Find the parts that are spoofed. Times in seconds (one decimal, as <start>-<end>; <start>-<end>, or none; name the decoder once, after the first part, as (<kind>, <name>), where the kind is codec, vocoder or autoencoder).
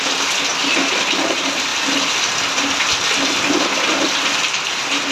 none